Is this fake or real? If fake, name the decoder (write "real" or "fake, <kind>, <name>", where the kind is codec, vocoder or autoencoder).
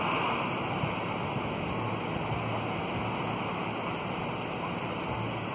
real